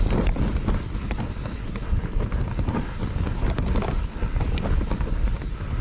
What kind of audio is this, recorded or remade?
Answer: recorded